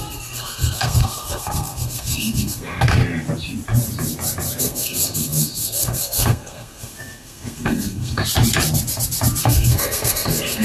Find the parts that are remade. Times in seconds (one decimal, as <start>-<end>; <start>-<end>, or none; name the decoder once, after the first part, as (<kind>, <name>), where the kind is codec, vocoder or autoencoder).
0.0-3.0 (codec, SNAC); 4.6-8.2; 9.4-10.6